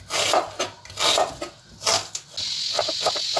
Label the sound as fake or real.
real